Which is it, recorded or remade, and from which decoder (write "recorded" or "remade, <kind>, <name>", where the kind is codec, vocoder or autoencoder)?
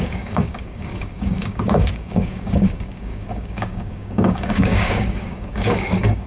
remade, codec, DAC